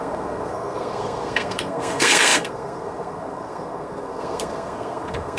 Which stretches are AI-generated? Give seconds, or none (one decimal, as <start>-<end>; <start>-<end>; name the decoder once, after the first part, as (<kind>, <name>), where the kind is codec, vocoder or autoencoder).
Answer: 0.0-5.4 (codec, SNAC)